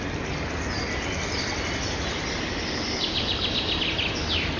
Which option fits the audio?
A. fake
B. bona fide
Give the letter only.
B